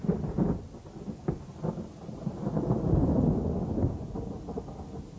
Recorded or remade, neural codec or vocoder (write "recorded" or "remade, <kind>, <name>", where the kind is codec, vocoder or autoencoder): recorded